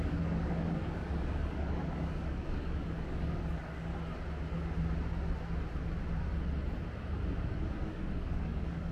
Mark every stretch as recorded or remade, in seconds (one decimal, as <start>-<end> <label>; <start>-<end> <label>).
0.0-3.9 remade; 3.9-7.4 recorded; 7.4-8.9 remade